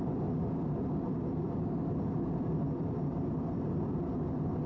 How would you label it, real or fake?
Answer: real